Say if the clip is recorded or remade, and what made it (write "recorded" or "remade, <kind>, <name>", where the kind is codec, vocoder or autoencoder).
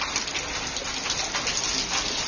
recorded